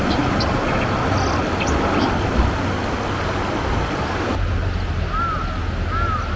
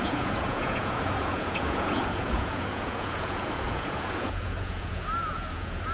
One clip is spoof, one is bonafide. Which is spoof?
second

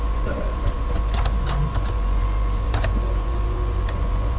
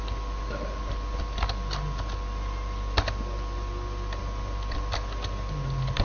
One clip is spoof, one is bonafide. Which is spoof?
first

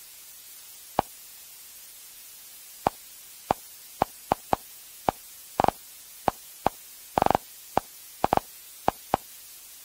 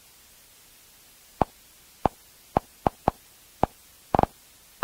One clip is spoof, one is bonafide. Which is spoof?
first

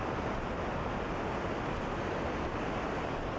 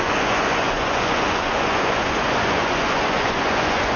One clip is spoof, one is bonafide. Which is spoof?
second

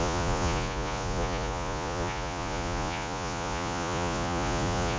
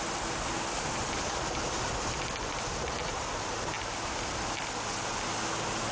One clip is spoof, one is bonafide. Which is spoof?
first